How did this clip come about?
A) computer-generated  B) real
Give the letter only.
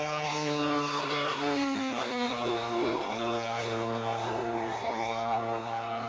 A